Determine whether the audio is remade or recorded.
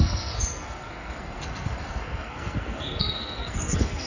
remade